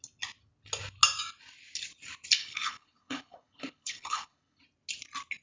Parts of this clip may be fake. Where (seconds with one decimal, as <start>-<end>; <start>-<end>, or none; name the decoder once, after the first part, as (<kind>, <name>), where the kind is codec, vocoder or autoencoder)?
2.4-4.6 (codec, HILCodec)